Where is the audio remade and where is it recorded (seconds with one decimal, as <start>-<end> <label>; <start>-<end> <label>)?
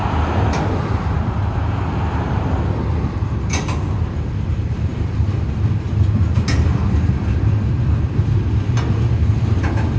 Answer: 0.0-10.0 recorded